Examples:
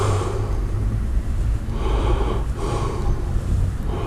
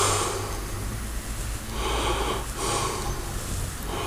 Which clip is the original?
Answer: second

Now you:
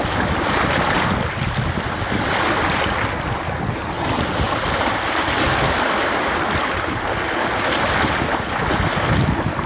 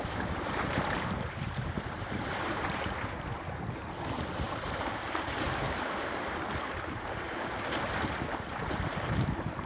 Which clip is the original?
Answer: first